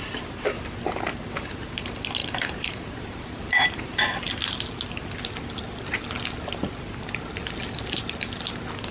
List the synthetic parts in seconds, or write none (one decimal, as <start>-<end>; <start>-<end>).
2.2-4.1